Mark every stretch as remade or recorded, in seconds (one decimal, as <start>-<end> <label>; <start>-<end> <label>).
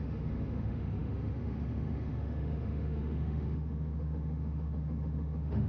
0.0-5.7 remade